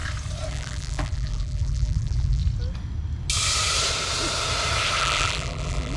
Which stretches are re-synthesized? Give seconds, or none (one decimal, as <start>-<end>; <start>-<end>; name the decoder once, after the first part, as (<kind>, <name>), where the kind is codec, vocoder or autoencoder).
0.5-2.4 (vocoder, BigVGAN v2); 5.0-6.0